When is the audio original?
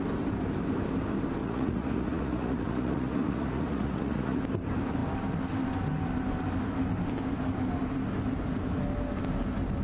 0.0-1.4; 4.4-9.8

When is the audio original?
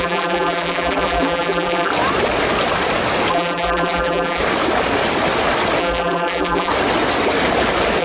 1.9-3.3; 4.4-5.8; 6.7-8.0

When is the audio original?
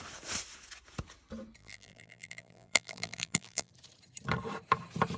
0.0-1.6; 3.7-5.2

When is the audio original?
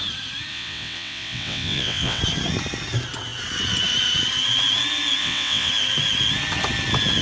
0.0-0.5; 2.2-5.2; 5.7-7.2